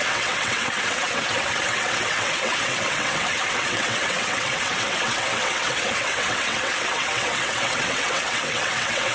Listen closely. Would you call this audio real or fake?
fake